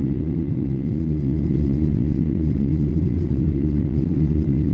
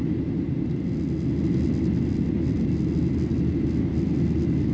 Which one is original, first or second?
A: second